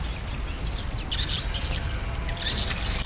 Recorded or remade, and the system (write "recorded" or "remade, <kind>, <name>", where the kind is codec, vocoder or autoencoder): recorded